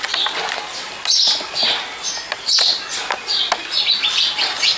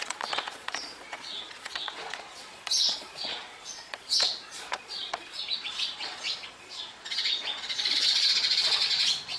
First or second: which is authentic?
first